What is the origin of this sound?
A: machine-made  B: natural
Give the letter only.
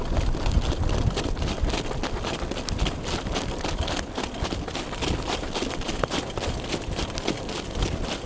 B